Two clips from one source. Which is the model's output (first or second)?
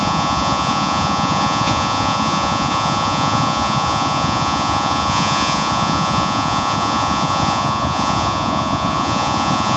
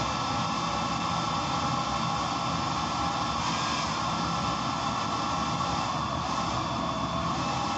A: first